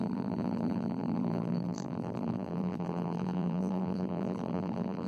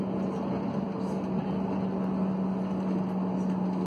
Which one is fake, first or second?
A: first